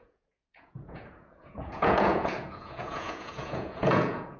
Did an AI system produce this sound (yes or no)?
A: yes